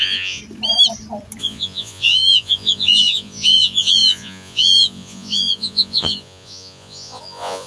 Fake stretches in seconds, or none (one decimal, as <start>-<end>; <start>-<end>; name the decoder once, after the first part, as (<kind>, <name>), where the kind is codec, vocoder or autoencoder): 0.0-0.4 (vocoder, Vocos); 1.4-7.7